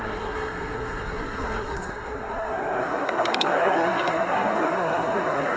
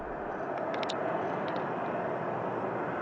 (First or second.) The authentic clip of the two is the second